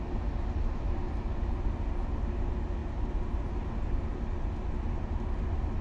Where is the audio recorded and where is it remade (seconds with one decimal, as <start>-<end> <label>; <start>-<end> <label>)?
0.0-5.8 recorded